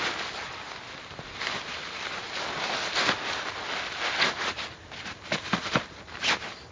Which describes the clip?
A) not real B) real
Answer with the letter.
B